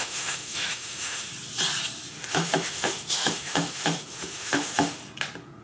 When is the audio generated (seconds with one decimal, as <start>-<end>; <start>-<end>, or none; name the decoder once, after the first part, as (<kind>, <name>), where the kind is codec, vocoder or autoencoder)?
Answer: 0.0-1.3 (autoencoder, DAC-VAE); 2.1-5.0